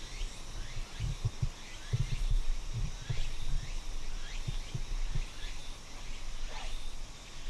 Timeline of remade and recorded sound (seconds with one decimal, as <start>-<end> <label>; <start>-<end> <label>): 0.0-7.5 recorded